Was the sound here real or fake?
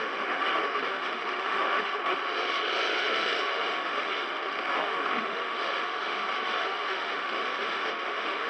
fake